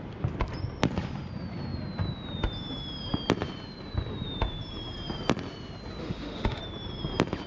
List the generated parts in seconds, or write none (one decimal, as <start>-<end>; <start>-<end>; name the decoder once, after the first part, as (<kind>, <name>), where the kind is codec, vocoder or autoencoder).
6.0-6.6 (autoencoder, DAC-VAE)